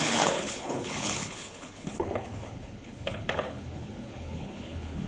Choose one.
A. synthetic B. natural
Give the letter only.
A